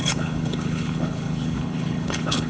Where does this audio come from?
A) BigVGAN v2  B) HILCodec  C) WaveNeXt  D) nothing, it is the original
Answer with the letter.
B